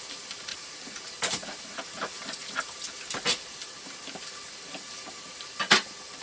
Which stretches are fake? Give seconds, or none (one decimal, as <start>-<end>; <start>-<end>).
0.5-1.0